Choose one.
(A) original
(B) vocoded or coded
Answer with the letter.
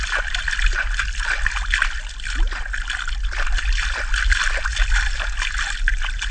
A